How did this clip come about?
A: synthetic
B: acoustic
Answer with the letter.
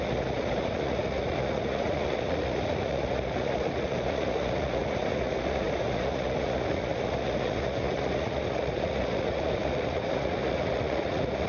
A